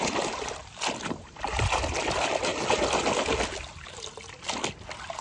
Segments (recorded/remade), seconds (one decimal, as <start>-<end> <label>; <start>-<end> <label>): 0.0-5.2 recorded